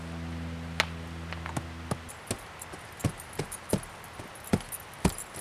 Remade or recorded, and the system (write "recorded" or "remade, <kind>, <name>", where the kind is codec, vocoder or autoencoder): recorded